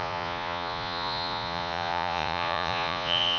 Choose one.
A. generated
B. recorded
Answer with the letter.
A